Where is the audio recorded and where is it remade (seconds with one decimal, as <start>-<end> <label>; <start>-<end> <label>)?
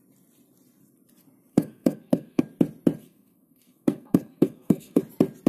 0.0-1.5 recorded; 1.5-2.4 remade; 2.4-3.0 recorded; 3.0-5.0 remade; 5.0-5.5 recorded